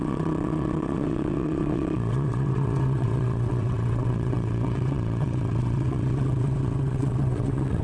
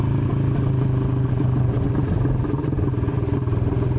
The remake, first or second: first